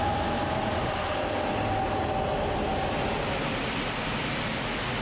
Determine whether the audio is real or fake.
real